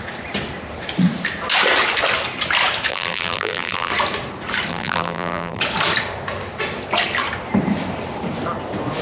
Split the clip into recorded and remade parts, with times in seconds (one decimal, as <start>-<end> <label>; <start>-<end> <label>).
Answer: 0.0-2.9 recorded; 2.9-3.9 remade; 3.9-4.7 recorded; 4.7-5.6 remade; 5.6-9.0 recorded